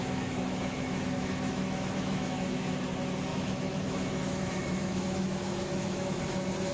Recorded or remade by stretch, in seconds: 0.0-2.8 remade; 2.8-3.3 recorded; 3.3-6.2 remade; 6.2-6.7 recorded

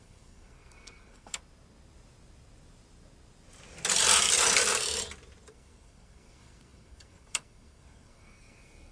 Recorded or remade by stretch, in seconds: 0.0-1.4 remade; 1.4-5.5 recorded; 5.5-8.9 remade

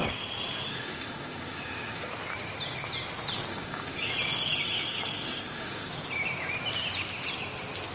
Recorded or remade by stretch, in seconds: 0.0-0.7 recorded; 0.7-2.1 remade; 2.1-3.5 recorded; 3.5-4.1 remade; 4.1-4.5 recorded; 4.5-5.9 remade; 5.9-7.9 recorded

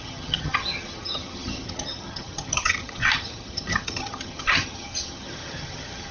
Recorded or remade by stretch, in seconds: 0.0-6.1 remade

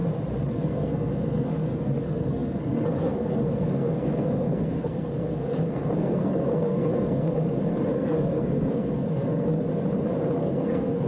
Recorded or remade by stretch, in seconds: 0.0-0.5 recorded; 0.5-9.7 remade; 9.7-10.4 recorded; 10.4-11.1 remade

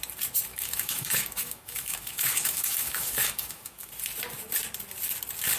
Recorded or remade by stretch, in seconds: 0.0-0.5 recorded; 0.5-3.9 remade; 3.9-5.6 recorded

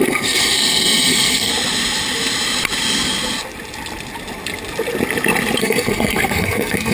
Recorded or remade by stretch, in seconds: 0.0-1.5 remade; 1.5-5.6 recorded; 5.6-6.9 remade

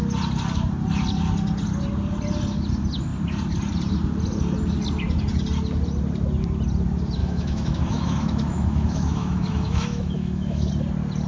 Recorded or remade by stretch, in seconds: 0.0-7.2 recorded; 7.2-10.7 remade; 10.7-11.3 recorded